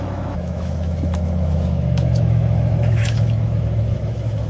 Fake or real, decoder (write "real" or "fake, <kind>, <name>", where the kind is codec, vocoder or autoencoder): fake, autoencoder, DAC-VAE